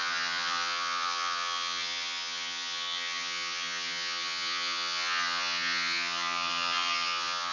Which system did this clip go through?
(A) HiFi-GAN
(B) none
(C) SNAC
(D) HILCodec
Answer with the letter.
A